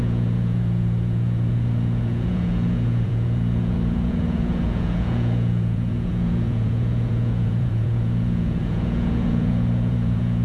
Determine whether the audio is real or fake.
fake